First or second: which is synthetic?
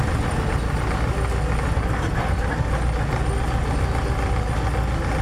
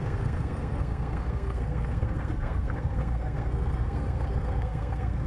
second